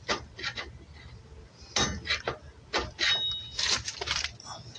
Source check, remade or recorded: recorded